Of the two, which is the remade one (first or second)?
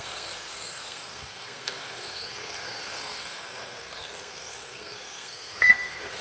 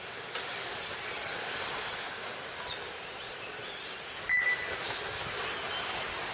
first